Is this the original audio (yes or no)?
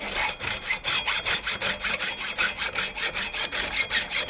yes